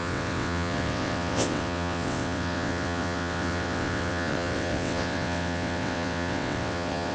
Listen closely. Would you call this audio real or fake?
fake